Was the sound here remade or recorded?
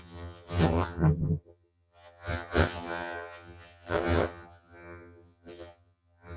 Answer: remade